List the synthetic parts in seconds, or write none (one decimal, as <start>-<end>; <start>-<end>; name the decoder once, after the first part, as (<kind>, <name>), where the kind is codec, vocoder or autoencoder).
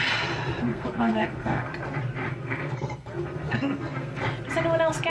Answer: 0.7-1.7 (codec, SNAC); 2.3-4.2